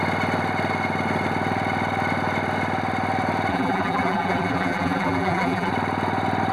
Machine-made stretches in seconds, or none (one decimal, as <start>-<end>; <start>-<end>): 3.5-5.7